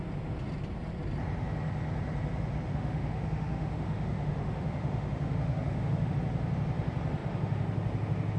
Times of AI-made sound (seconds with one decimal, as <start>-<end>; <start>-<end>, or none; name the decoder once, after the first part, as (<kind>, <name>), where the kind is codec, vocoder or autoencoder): 2.7-6.1 (autoencoder, DAC-VAE)